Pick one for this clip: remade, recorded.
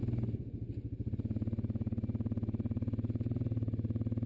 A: recorded